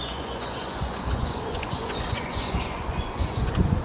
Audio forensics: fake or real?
fake